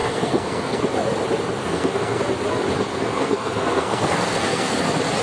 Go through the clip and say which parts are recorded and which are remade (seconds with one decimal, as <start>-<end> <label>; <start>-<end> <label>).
0.0-0.9 remade; 0.9-1.6 recorded; 1.6-2.2 remade; 2.2-2.9 recorded; 2.9-4.8 remade; 4.8-5.2 recorded